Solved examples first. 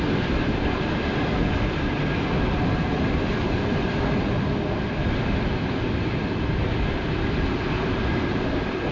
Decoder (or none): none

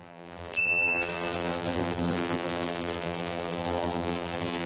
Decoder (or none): vocoder, BigVGAN v2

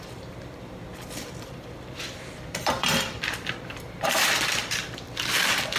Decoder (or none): vocoder, BigVGAN v2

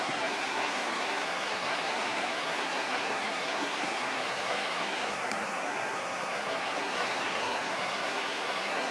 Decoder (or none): codec, SNAC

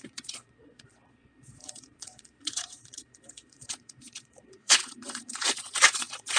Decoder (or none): vocoder, Vocos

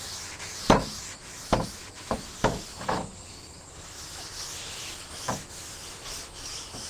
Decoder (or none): autoencoder, DAC-VAE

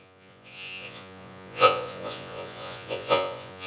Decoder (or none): vocoder, Vocos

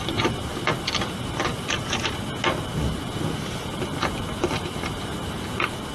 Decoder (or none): none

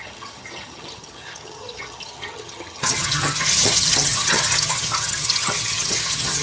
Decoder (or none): vocoder, HiFi-GAN